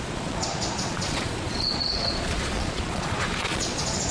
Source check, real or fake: fake